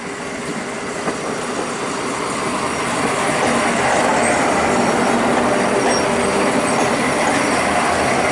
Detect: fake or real real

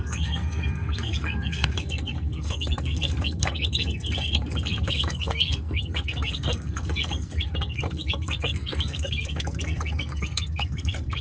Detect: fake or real fake